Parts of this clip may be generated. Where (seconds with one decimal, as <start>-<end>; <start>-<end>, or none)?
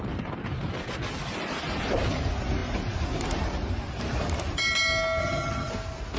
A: 5.2-5.7